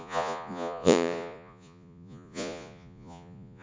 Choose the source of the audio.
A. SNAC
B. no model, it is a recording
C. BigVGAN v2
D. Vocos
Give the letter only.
D